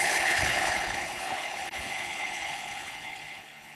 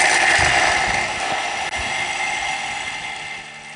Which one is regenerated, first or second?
first